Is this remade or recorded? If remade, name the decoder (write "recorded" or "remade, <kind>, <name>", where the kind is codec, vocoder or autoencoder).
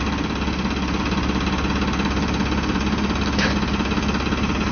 recorded